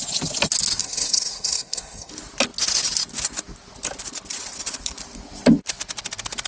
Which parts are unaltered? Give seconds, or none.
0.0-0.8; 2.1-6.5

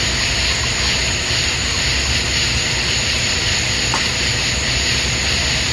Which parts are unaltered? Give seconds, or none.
0.0-5.7